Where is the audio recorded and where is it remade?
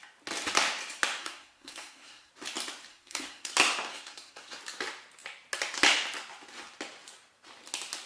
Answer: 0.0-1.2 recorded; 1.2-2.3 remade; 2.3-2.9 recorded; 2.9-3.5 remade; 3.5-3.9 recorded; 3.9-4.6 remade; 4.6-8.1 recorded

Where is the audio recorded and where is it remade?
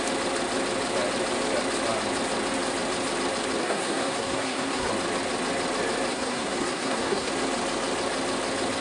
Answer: 0.0-3.6 recorded; 3.6-4.9 remade; 4.9-6.1 recorded; 6.1-7.3 remade; 7.3-8.8 recorded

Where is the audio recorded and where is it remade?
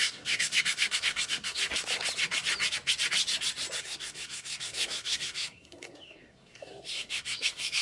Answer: 0.0-1.6 remade; 1.6-3.8 recorded; 3.8-7.8 remade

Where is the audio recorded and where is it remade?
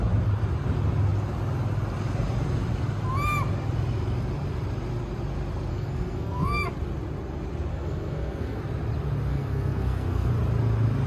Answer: 0.0-5.7 recorded; 5.7-6.7 remade; 6.7-7.7 recorded; 7.7-8.6 remade; 8.6-9.3 recorded; 9.3-10.3 remade; 10.3-11.1 recorded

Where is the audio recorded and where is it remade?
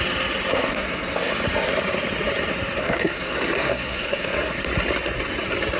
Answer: 0.0-0.5 recorded; 0.5-1.3 remade; 1.3-2.8 recorded; 2.8-4.6 remade; 4.6-5.8 recorded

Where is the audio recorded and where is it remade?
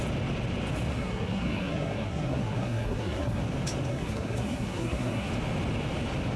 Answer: 0.0-0.9 recorded; 0.9-3.4 remade; 3.4-3.9 recorded; 3.9-5.3 remade; 5.3-6.4 recorded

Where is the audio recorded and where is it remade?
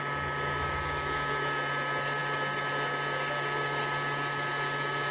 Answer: 0.0-5.1 recorded